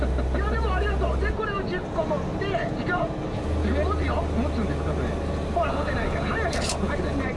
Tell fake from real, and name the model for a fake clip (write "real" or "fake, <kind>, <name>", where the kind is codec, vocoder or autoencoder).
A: real